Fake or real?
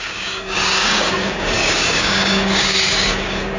fake